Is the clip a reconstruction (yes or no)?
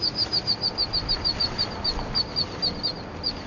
no